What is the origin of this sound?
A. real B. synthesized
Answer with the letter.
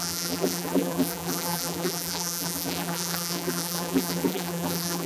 B